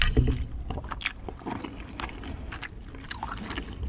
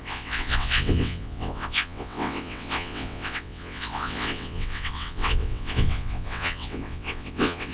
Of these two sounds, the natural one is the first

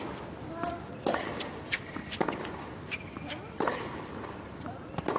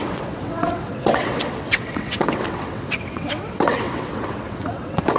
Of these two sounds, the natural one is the first